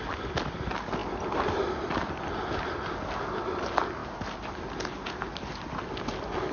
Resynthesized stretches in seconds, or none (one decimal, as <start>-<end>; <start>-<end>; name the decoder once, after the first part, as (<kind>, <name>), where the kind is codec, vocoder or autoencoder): none